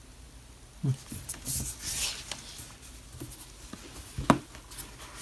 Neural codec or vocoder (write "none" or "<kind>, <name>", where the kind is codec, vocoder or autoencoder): none